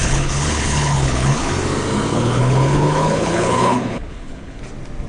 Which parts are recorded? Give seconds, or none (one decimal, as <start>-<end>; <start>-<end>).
1.5-2.1; 4.6-5.1